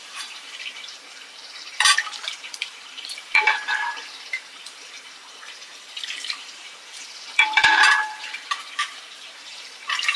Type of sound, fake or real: fake